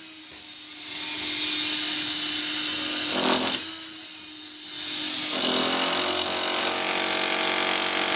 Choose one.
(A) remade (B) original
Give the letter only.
B